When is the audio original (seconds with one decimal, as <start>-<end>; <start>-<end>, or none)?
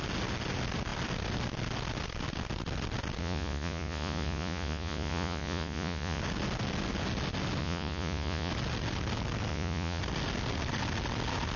0.0-3.2; 6.2-7.6; 8.5-9.5; 10.0-11.6